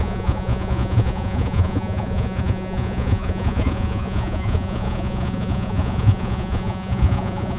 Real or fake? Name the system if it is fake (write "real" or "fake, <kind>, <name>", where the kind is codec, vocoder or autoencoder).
fake, vocoder, Vocos